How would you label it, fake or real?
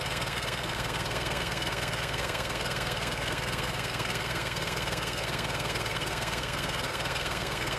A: fake